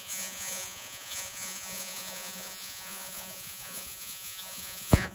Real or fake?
fake